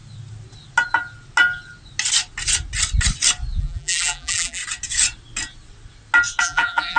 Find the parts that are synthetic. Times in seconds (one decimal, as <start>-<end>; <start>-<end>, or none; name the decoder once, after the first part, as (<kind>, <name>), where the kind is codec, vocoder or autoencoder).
3.6-4.6 (vocoder, BigVGAN v2); 6.4-7.0